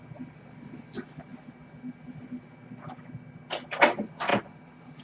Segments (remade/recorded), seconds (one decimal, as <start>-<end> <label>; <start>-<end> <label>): 0.0-5.0 recorded